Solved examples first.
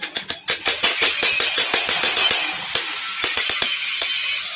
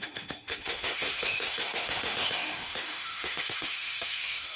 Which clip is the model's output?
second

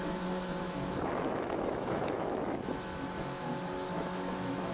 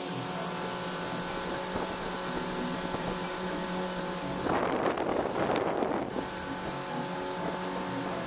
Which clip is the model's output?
first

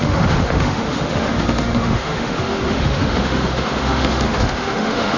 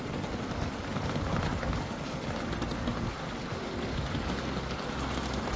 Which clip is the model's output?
first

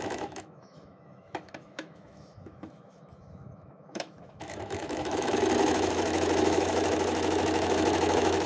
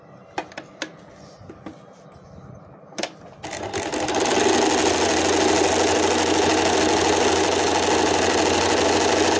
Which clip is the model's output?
first